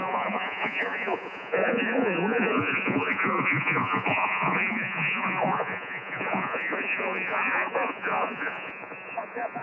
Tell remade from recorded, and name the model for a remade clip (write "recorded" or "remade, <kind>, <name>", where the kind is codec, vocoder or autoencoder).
remade, vocoder, Vocos